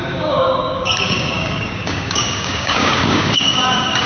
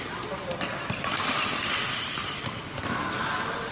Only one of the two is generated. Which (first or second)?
first